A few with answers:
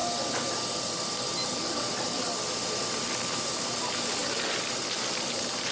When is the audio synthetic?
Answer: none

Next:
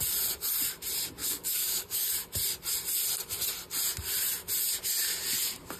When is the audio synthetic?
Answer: 1.2-2.1 (codec, DAC)

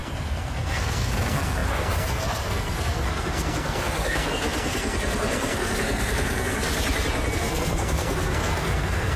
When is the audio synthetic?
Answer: 0.0-6.7 (codec, SNAC); 7.3-9.2

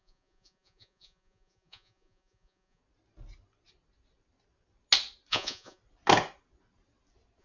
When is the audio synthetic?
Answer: 0.0-2.8 (vocoder, Vocos); 5.3-5.8

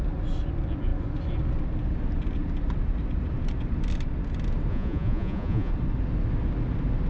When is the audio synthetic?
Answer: 4.7-5.7 (vocoder, Vocos)

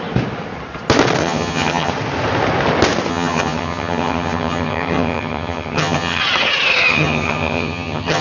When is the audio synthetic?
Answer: 1.2-1.9 (vocoder, HiFi-GAN); 3.1-6.2; 6.9-8.2

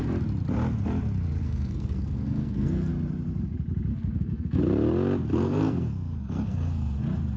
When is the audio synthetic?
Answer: 1.4-2.9 (codec, SNAC); 3.9-4.6; 5.3-7.0